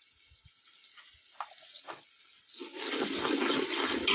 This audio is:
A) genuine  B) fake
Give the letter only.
A